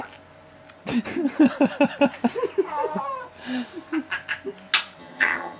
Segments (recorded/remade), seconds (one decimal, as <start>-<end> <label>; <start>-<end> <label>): 0.0-5.0 recorded; 5.0-5.6 remade